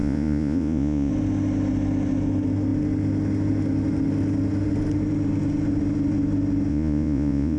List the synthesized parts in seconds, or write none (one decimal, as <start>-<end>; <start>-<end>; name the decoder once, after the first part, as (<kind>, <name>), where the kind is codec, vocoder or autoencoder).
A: 0.0-1.1 (vocoder, Vocos); 6.7-7.6